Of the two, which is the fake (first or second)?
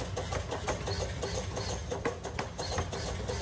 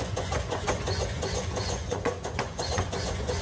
second